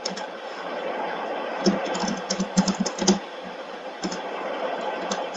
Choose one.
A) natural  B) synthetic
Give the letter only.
A